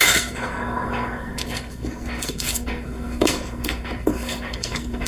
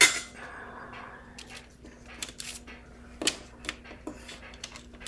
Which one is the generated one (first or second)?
first